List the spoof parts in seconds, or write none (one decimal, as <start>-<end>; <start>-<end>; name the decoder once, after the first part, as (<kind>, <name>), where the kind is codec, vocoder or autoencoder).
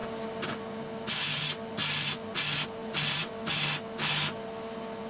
2.8-3.5 (vocoder, BigVGAN v2)